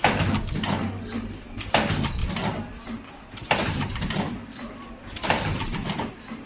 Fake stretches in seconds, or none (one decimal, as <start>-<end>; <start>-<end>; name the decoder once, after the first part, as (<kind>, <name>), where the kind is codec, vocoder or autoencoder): 2.2-6.1 (vocoder, BigVGAN v2)